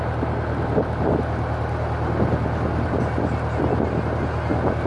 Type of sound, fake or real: real